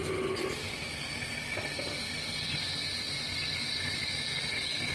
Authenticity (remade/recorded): recorded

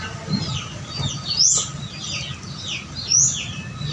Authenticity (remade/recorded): recorded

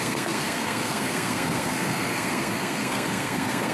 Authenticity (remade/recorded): remade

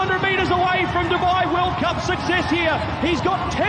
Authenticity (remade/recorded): recorded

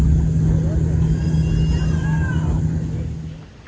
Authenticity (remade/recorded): recorded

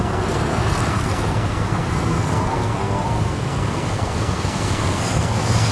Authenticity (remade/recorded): remade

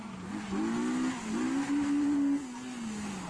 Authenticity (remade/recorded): recorded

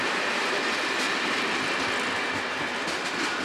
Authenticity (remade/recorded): recorded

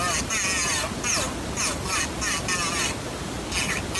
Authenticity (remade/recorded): recorded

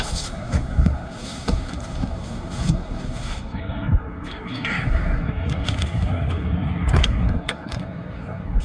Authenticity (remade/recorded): remade